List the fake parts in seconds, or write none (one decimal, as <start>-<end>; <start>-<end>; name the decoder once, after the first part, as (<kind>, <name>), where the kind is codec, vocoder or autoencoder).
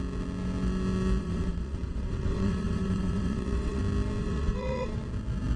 1.2-3.8 (vocoder, WaveNeXt); 4.2-5.0